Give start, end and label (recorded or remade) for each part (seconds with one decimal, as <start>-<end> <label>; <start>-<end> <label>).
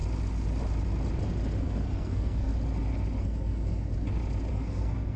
0.0-1.6 recorded; 1.6-2.5 remade; 2.5-3.2 recorded; 3.2-3.9 remade; 3.9-4.5 recorded; 4.5-5.2 remade